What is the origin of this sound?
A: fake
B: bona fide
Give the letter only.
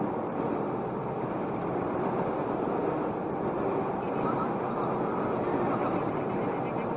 B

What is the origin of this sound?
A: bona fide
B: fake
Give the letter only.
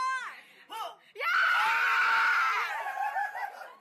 A